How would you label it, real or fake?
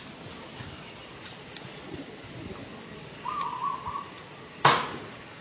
real